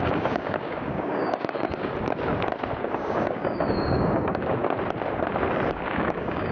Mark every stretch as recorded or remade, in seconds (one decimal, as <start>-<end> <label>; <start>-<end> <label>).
0.0-1.9 remade; 1.9-2.8 recorded; 2.8-4.6 remade; 4.6-5.7 recorded; 5.7-6.5 remade